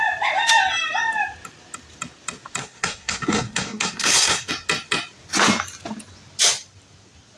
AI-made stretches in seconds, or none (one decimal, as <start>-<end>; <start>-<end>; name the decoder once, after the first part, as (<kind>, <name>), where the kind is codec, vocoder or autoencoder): 2.6-4.5 (codec, SNAC)